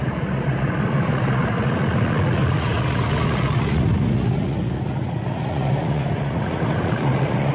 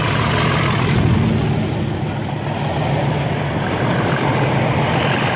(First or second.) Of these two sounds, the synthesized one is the first